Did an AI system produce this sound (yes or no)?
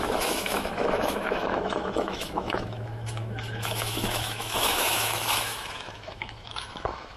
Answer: yes